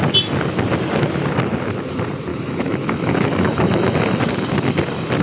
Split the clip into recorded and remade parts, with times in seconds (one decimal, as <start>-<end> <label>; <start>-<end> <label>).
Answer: 0.0-2.3 recorded; 2.3-4.2 remade; 4.2-5.2 recorded